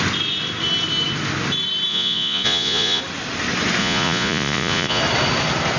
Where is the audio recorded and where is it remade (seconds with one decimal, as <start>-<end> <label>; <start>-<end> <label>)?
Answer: 0.0-1.9 recorded; 1.9-3.0 remade; 3.0-3.8 recorded; 3.8-5.0 remade; 5.0-5.8 recorded